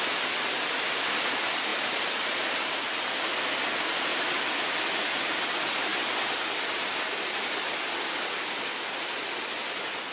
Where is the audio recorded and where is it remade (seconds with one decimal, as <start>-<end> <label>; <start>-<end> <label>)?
0.0-1.7 recorded; 1.7-3.1 remade; 3.1-4.1 recorded; 4.1-4.9 remade; 4.9-10.1 recorded